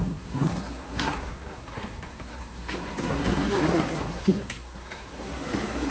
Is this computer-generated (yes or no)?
yes